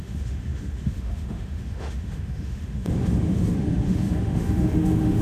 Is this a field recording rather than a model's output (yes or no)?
no